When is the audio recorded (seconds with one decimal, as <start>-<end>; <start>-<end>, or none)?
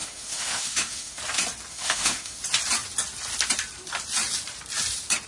1.2-1.7; 2.4-5.3